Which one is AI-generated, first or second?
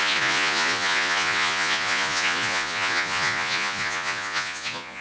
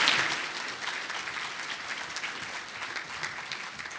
first